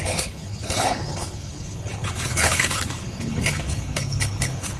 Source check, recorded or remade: remade